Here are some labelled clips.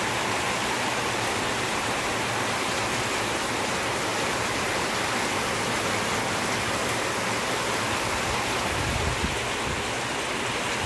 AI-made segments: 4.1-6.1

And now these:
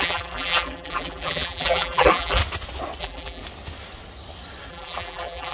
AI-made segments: 0.0-2.4; 3.0-3.4; 4.7-5.5

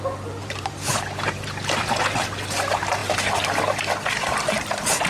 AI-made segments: 0.4-1.8

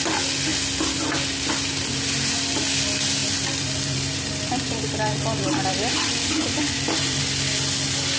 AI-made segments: 3.2-7.2

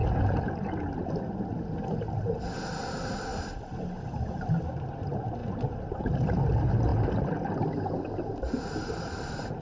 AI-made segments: 1.1-5.4; 6.0-6.9; 7.5-9.6

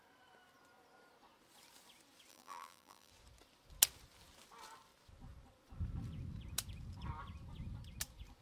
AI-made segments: 2.3-3.1